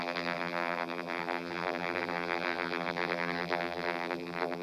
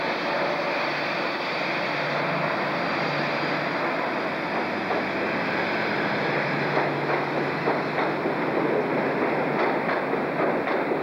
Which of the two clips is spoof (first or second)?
first